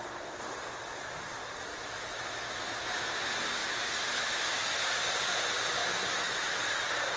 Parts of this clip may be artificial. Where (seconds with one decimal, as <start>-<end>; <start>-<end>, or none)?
1.7-3.1; 3.6-4.8; 5.8-6.7